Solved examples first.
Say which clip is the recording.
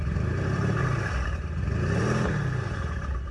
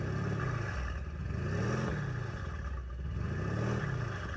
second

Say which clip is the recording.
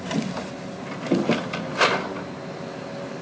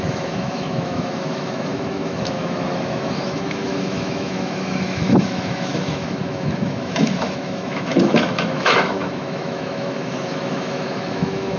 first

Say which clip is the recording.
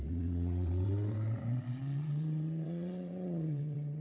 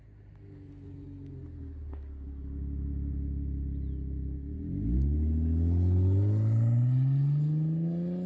second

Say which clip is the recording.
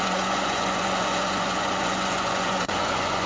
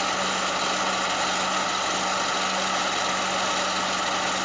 second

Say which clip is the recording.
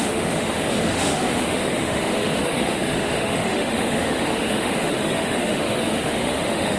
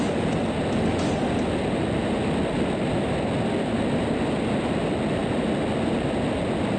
second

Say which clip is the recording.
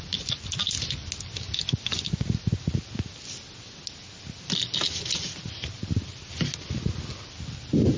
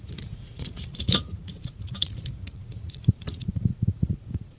first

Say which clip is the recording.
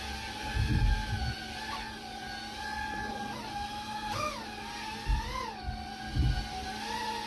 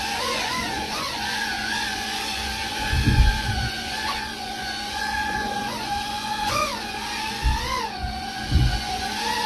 first